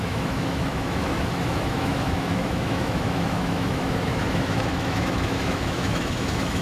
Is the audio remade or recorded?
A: remade